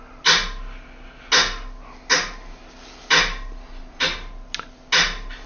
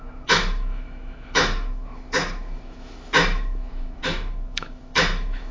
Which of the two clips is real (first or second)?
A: first